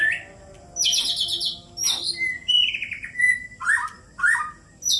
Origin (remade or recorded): recorded